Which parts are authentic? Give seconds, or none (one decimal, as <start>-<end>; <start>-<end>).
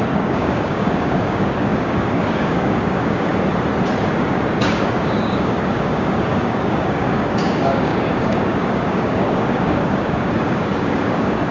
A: 3.3-4.1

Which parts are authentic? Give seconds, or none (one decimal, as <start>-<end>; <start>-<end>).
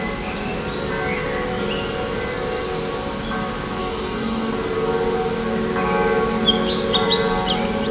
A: 0.0-3.8; 4.5-7.9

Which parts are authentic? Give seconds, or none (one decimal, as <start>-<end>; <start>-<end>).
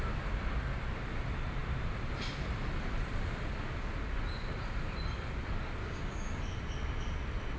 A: 0.0-5.8; 6.4-7.6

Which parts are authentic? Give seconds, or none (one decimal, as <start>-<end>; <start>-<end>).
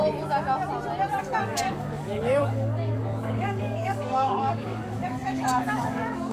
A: 0.0-1.2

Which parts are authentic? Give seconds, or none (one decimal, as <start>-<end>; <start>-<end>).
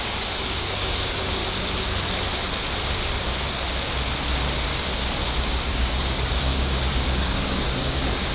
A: 1.4-5.7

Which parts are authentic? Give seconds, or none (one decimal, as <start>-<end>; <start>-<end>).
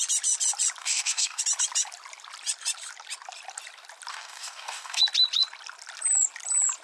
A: 0.0-0.8; 1.4-4.1; 5.0-6.8